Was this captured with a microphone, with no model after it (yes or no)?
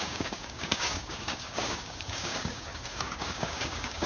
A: no